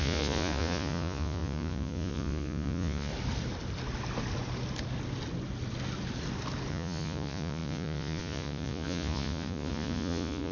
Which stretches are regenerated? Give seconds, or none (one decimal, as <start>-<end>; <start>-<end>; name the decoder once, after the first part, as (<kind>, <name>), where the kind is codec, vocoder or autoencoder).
0.0-3.1 (vocoder, Vocos); 6.7-10.5